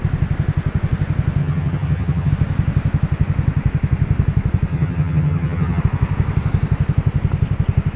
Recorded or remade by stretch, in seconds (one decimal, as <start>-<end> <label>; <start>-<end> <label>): 0.0-1.4 recorded; 1.4-2.3 remade; 2.3-4.7 recorded; 4.7-5.8 remade; 5.8-8.0 recorded